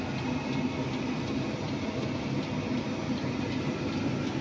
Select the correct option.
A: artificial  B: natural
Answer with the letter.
B